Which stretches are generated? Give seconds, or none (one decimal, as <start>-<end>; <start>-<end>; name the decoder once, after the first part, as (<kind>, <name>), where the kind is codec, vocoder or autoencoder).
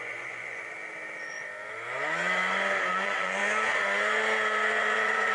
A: 0.0-0.7 (vocoder, Vocos); 2.9-3.4; 4.8-5.3